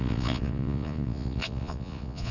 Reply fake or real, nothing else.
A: fake